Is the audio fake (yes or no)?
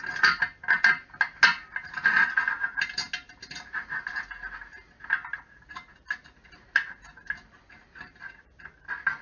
no